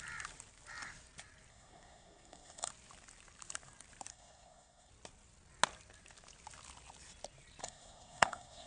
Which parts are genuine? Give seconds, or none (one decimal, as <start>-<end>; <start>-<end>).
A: 0.0-1.5; 2.7-4.1; 4.9-7.6